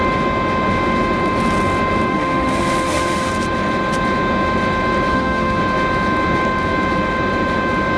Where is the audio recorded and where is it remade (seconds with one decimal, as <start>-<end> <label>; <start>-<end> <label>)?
0.0-2.1 recorded; 2.1-3.3 remade; 3.3-5.1 recorded; 5.1-5.6 remade; 5.6-8.0 recorded